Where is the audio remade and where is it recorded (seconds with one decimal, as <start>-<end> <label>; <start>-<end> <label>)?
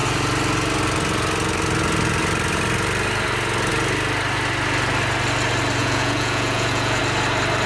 0.0-5.8 recorded; 5.8-7.0 remade; 7.0-7.7 recorded